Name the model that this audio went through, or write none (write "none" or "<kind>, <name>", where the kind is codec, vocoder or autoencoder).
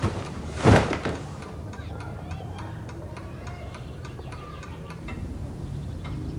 vocoder, BigVGAN v2